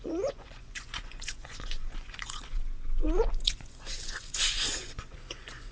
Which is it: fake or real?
fake